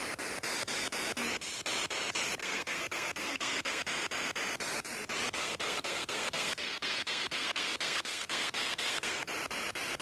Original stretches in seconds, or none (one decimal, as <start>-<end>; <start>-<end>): 0.0-2.4; 3.8-5.4; 9.3-10.0